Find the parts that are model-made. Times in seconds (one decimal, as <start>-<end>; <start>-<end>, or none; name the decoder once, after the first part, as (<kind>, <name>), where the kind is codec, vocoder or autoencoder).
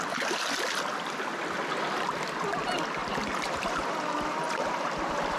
3.0-3.9 (vocoder, BigVGAN v2); 4.6-5.4